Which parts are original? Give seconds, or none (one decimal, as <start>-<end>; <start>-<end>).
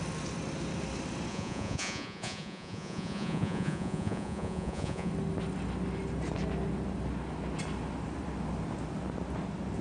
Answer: 0.0-1.3; 5.1-9.8